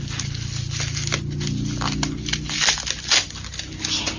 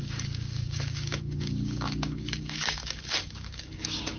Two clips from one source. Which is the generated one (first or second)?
second